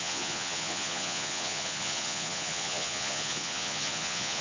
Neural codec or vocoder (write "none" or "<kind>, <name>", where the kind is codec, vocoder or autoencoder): vocoder, Vocos